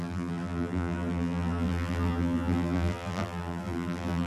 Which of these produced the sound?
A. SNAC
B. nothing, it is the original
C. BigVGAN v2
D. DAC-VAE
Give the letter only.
C